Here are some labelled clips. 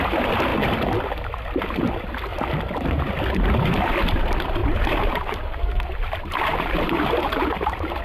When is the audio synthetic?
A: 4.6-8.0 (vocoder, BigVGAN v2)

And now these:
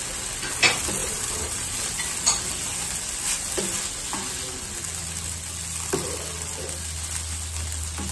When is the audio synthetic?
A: 1.0-2.0 (vocoder, BigVGAN v2)